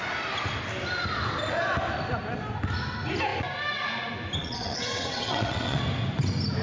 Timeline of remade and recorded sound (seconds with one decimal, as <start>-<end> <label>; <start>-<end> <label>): 0.0-4.4 recorded; 4.4-5.8 remade; 5.8-6.6 recorded